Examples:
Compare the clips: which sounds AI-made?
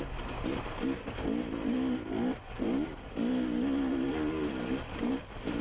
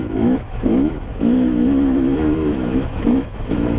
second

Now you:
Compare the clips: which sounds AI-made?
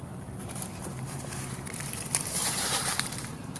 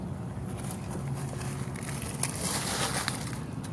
first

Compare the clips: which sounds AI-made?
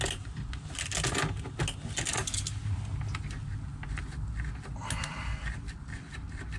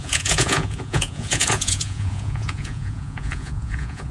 second